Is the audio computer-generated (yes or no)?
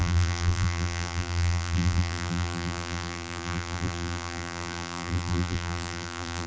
yes